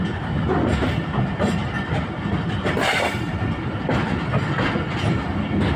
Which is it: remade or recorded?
recorded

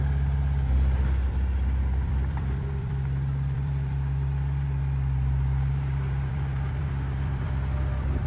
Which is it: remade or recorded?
remade